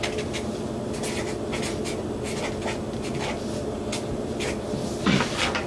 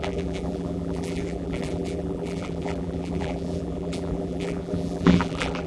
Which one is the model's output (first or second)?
second